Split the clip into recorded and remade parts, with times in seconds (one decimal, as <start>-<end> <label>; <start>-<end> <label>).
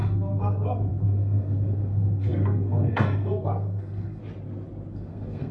0.0-4.2 remade; 4.2-4.9 recorded; 4.9-5.5 remade